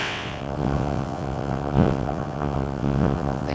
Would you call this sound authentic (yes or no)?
no